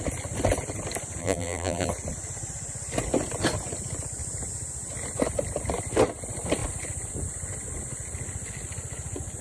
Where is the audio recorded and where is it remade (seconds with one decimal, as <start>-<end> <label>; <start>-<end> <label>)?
0.0-1.2 recorded; 1.2-1.9 remade; 1.9-9.4 recorded